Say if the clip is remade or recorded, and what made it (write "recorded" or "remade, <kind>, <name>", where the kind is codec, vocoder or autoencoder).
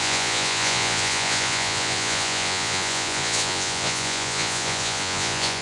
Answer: remade, vocoder, Vocos